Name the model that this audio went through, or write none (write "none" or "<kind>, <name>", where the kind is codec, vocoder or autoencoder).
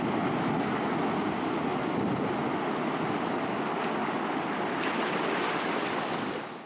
none